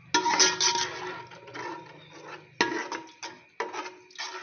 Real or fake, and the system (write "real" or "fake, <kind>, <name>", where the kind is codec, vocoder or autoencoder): real